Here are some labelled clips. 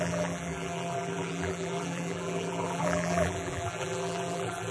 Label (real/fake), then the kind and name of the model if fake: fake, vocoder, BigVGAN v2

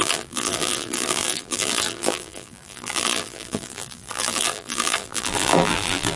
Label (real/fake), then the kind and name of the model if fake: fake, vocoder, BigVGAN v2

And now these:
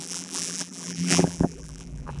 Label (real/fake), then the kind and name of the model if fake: fake, vocoder, BigVGAN v2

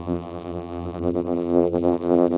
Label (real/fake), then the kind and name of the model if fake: fake, vocoder, BigVGAN v2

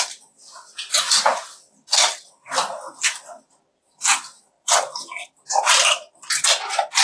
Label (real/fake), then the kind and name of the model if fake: real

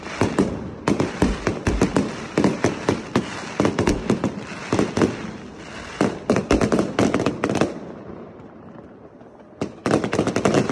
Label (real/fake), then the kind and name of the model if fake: fake, vocoder, BigVGAN v2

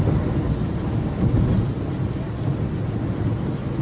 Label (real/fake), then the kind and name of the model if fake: real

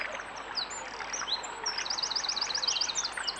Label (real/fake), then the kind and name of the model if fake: real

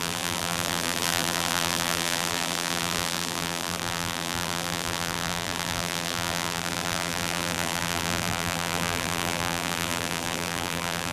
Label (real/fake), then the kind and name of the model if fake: fake, vocoder, BigVGAN v2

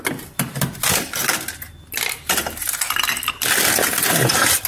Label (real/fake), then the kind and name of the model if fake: fake, vocoder, BigVGAN v2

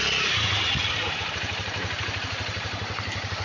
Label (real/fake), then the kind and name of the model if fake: fake, vocoder, BigVGAN v2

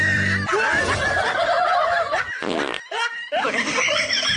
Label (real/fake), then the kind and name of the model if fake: fake, vocoder, BigVGAN v2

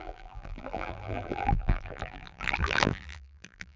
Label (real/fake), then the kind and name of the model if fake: fake, vocoder, BigVGAN v2